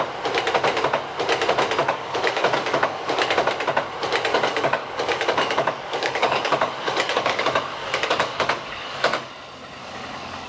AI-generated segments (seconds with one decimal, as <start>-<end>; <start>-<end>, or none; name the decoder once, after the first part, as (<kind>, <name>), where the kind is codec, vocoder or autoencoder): 1.8-3.3 (codec, DAC); 4.3-9.3; 9.8-10.5